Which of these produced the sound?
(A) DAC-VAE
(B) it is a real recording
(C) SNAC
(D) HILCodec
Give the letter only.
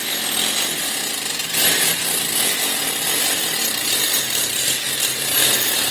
B